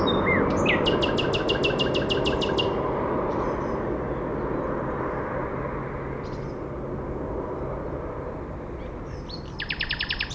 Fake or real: real